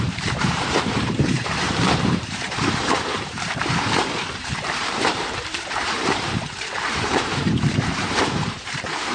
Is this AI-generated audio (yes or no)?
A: yes